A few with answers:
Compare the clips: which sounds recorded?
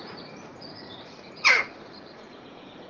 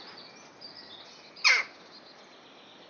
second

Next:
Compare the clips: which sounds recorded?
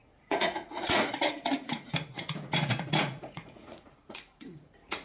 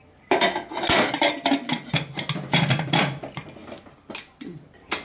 second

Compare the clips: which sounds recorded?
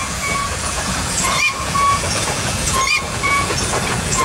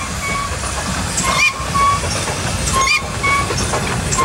second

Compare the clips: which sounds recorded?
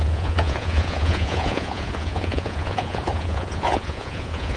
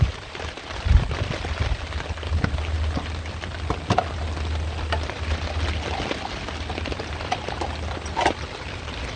second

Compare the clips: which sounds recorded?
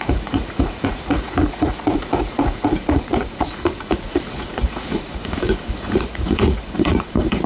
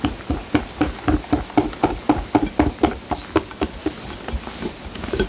second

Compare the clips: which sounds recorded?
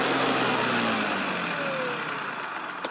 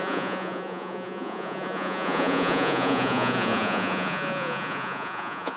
first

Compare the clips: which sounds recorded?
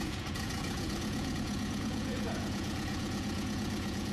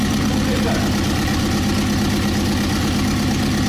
second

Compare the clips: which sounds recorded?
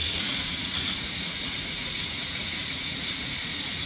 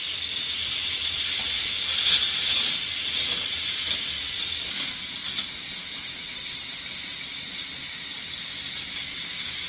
second